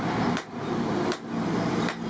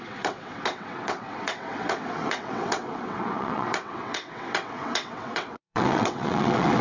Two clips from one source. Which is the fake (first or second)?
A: second